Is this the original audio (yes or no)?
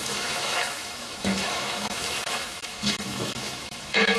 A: no